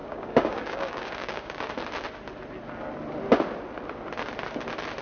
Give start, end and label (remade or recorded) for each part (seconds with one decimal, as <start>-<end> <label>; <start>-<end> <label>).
0.0-1.6 remade; 1.6-5.0 recorded